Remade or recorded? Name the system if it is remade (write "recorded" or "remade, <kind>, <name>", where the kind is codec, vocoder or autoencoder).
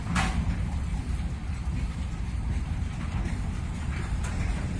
recorded